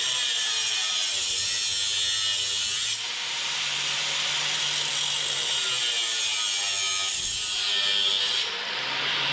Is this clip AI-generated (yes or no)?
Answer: no